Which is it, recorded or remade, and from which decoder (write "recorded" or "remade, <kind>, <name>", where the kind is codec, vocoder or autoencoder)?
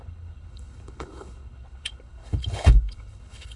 remade, codec, HILCodec